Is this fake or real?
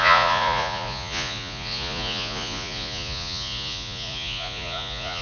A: fake